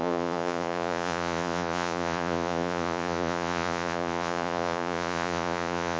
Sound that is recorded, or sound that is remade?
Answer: remade